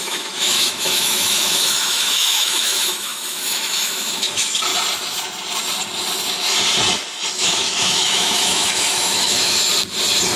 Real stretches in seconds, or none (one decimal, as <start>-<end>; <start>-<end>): 4.7-7.3; 9.7-10.4